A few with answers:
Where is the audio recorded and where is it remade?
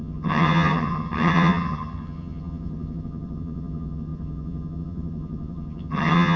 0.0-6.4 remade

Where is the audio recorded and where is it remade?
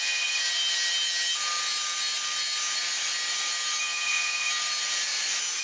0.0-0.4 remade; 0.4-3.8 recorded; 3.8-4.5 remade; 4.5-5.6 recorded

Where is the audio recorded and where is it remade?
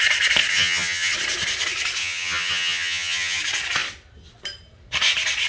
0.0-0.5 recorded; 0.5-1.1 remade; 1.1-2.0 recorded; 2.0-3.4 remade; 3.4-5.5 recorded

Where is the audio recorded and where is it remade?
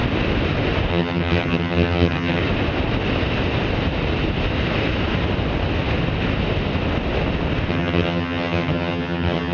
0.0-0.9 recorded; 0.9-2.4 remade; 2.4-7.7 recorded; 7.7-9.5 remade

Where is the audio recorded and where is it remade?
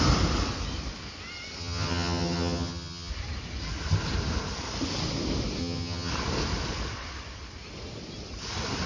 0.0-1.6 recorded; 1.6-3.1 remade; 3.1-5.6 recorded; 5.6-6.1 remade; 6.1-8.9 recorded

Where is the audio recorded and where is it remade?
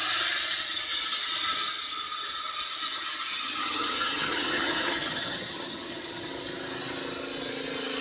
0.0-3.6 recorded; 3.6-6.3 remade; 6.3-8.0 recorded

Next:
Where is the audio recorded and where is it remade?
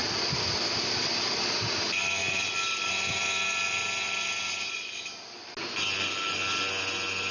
0.0-7.3 recorded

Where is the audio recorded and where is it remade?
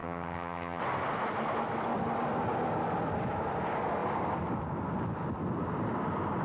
0.0-0.8 remade; 0.8-6.4 recorded